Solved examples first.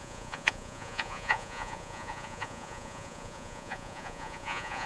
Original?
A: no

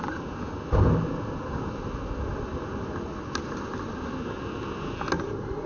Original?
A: yes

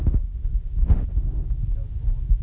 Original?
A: yes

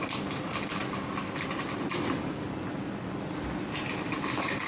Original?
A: yes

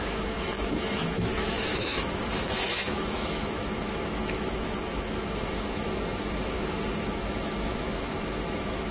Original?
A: no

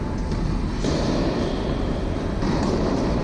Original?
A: yes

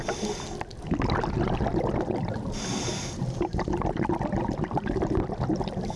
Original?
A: yes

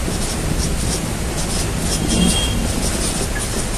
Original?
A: yes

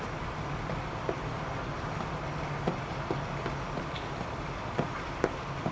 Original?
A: yes